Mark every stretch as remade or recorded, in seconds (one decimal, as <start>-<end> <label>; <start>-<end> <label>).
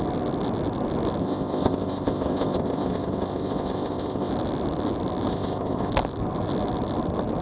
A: 0.0-1.2 recorded; 1.2-4.3 remade; 4.3-5.3 recorded; 5.3-5.9 remade; 5.9-7.4 recorded